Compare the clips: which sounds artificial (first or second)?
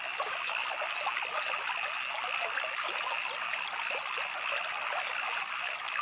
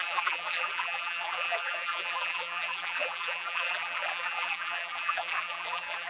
second